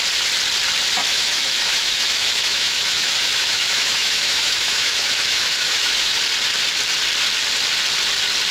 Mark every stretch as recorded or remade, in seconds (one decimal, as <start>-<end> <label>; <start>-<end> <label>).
0.0-1.1 recorded; 1.1-6.2 remade; 6.2-8.5 recorded